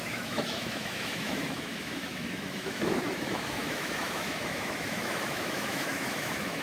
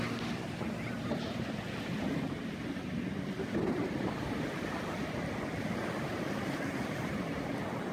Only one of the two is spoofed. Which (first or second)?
first